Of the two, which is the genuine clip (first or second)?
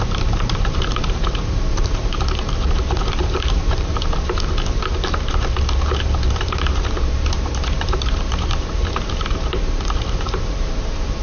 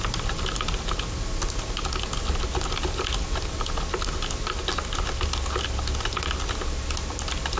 second